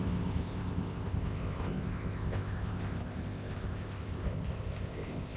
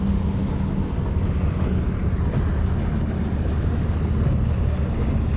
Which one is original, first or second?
second